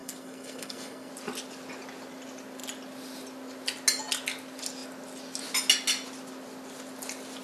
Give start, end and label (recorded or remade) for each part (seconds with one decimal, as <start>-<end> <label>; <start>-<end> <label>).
0.0-1.1 remade; 1.1-7.4 recorded